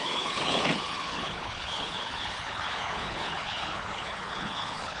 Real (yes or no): no